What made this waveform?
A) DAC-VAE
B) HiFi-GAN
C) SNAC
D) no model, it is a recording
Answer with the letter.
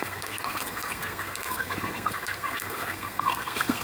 C